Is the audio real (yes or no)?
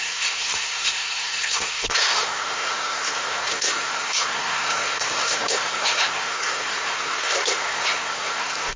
no